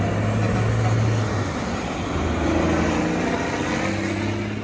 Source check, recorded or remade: recorded